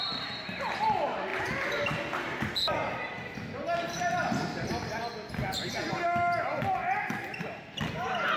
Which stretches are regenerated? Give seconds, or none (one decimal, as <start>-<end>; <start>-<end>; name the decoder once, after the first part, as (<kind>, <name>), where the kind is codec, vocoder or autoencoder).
none